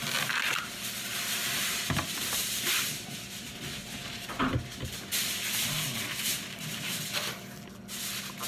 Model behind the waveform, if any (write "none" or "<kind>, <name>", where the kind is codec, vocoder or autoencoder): none